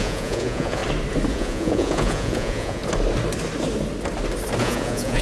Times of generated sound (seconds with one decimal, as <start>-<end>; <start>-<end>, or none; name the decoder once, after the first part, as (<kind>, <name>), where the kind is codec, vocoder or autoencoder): 0.0-0.8 (vocoder, Vocos); 1.3-2.8; 4.6-5.2